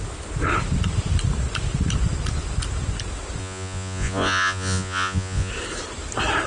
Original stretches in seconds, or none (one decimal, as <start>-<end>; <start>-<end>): 0.0-3.4; 5.5-6.5